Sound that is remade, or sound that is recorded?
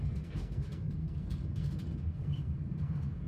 remade